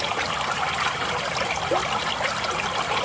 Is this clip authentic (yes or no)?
yes